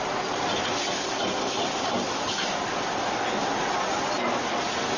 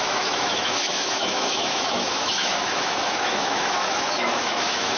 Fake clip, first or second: second